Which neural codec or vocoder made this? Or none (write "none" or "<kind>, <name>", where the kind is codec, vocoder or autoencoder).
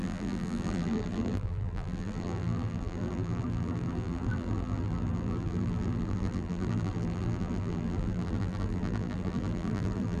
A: vocoder, BigVGAN v2